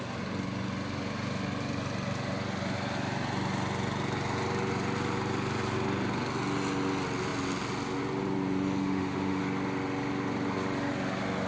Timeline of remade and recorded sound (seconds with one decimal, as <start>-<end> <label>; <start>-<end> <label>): 0.0-8.8 recorded; 8.8-9.4 remade; 9.4-11.5 recorded